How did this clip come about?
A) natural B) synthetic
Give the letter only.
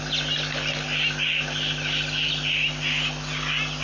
A